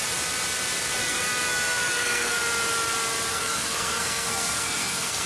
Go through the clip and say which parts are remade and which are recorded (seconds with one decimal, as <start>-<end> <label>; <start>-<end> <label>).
0.0-1.0 recorded; 1.0-2.4 remade; 2.4-3.3 recorded; 3.3-5.3 remade